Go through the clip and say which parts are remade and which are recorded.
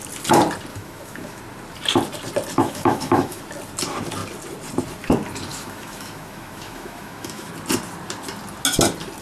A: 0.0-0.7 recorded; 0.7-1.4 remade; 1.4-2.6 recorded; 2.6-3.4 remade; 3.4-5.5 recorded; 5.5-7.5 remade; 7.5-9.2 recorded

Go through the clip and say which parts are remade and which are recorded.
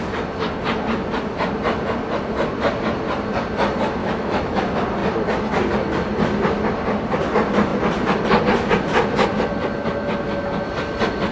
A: 0.0-4.0 recorded; 4.0-4.6 remade; 4.6-11.3 recorded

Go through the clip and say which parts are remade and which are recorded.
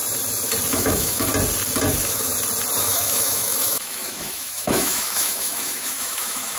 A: 0.0-0.7 recorded; 0.7-1.3 remade; 1.3-1.9 recorded; 1.9-2.3 remade; 2.3-2.8 recorded; 2.8-6.6 remade